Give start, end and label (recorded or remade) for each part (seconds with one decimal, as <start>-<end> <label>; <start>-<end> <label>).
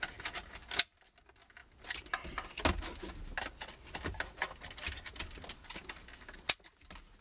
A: 0.0-0.4 recorded; 0.4-1.2 remade; 1.2-7.2 recorded